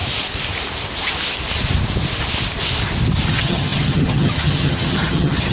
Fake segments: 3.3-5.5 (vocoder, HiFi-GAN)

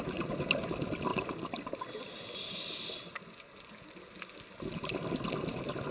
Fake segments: none

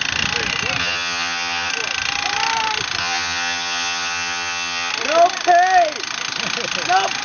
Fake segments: 0.8-1.7 (vocoder, HiFi-GAN); 3.0-4.9

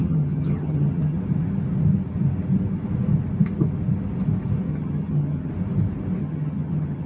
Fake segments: 0.0-1.2 (vocoder, HiFi-GAN); 4.7-5.5; 6.2-7.1

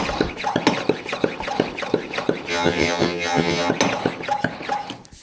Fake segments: 2.5-3.7 (vocoder, HiFi-GAN)

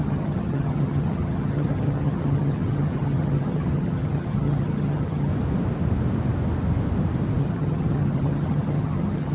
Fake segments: 0.0-5.3 (vocoder, HiFi-GAN); 7.4-9.3

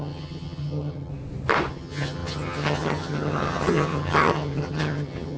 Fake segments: 0.0-1.1 (vocoder, HiFi-GAN); 1.7-5.4

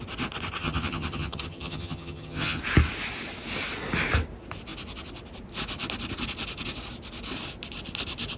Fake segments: 0.6-2.6 (vocoder, HiFi-GAN)